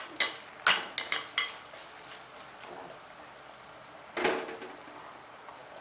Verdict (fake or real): real